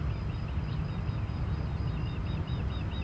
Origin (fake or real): real